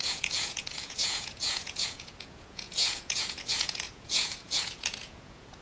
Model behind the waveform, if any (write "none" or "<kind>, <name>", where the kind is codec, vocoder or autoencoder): vocoder, Vocos